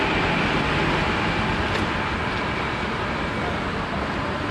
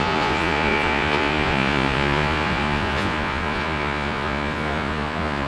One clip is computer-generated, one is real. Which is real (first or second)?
first